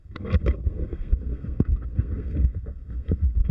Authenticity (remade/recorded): remade